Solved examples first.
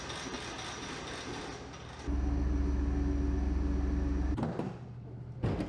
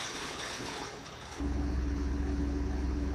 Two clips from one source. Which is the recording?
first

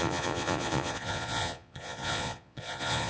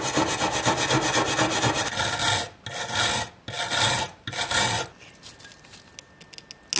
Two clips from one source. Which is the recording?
second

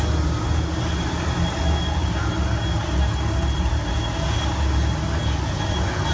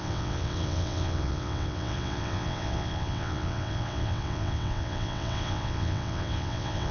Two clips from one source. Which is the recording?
first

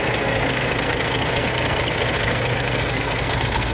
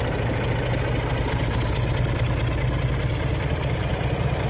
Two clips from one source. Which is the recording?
second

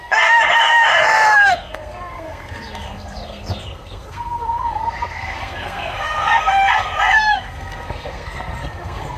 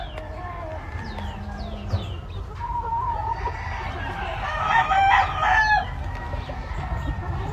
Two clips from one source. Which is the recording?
second